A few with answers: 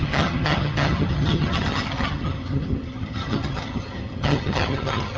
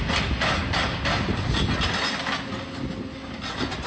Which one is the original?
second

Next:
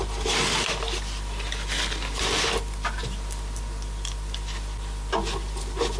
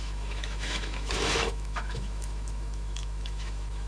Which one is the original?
first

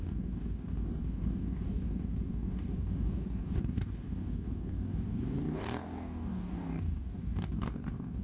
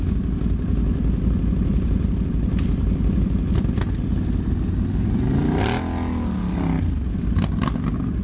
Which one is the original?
second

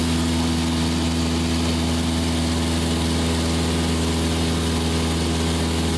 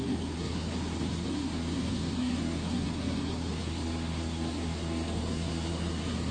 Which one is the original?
first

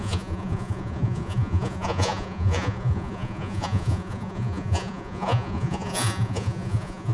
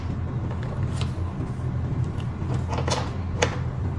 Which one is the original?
second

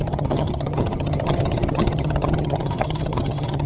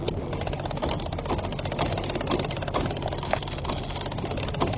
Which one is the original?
second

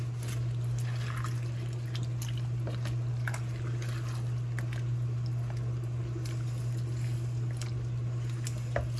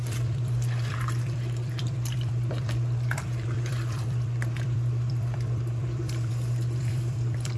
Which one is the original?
first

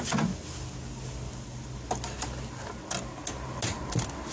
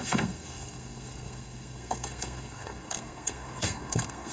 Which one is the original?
first